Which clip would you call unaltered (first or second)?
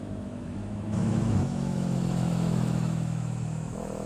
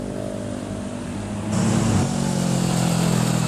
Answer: second